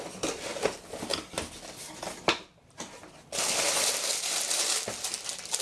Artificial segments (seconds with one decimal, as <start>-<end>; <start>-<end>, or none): none